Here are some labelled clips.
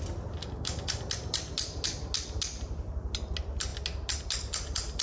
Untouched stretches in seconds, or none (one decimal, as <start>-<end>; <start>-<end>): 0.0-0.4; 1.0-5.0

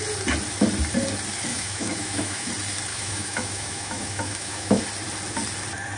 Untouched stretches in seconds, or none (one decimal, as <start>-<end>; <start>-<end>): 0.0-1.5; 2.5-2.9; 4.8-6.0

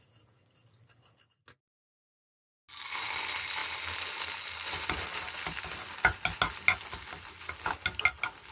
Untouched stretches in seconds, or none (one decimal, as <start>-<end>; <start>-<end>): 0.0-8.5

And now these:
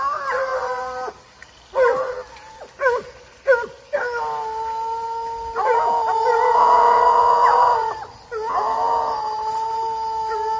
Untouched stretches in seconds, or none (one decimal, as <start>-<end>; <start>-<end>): 0.0-10.6

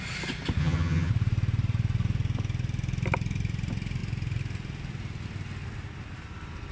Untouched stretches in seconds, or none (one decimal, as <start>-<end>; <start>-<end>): 0.0-0.6; 1.1-6.7